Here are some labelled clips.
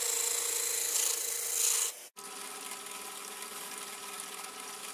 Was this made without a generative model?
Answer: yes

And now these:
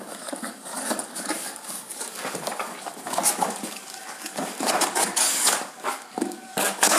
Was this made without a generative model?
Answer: no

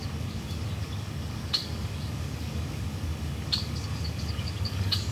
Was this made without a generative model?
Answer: no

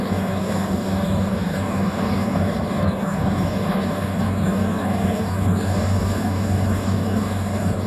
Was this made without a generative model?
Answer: no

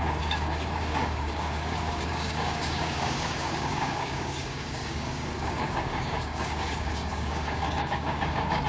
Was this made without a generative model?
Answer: no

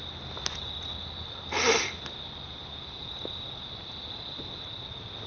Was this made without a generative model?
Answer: yes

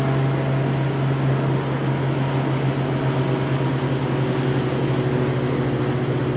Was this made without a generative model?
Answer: yes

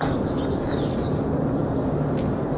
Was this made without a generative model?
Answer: yes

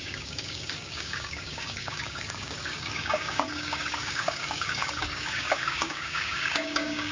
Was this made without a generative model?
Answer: no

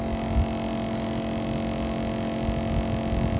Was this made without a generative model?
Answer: yes